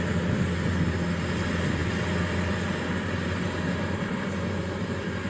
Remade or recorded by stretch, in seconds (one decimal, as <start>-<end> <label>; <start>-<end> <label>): 0.0-5.3 recorded